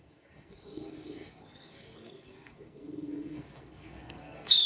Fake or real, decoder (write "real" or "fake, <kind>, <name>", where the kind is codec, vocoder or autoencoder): fake, codec, SNAC